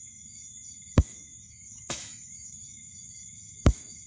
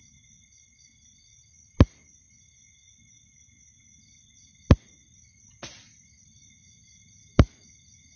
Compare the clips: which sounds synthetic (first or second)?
first